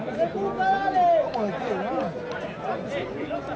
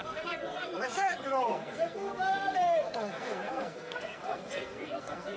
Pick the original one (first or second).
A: first